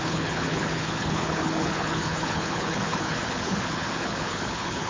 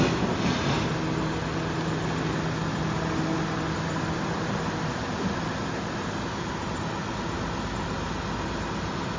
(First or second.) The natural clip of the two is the second